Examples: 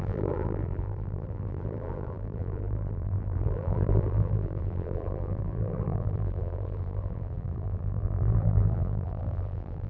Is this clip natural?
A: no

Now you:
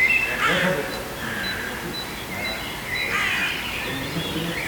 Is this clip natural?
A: yes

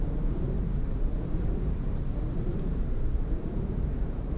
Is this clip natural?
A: no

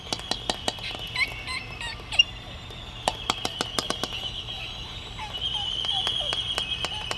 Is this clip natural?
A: yes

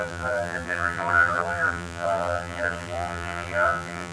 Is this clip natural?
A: no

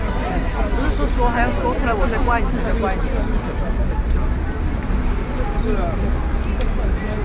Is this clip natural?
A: yes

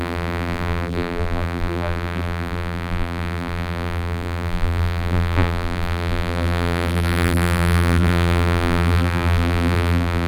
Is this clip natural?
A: no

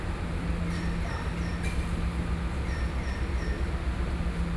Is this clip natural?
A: yes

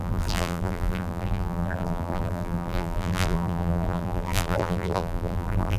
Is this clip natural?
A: no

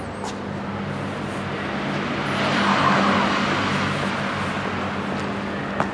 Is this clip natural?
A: yes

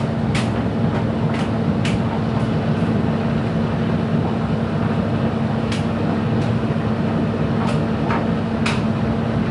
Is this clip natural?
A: yes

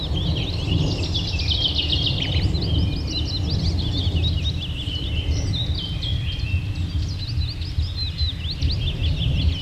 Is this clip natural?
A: yes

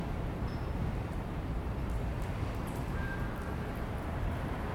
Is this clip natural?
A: no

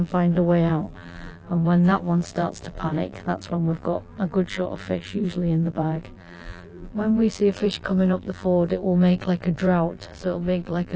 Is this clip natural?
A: no